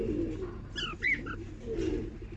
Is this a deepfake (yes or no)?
no